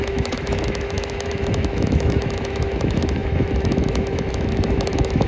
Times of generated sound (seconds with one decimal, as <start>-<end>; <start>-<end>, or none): 0.0-5.3